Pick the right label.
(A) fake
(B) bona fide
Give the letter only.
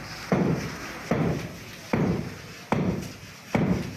B